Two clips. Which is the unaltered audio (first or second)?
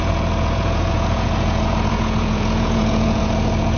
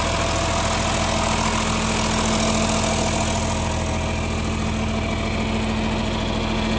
second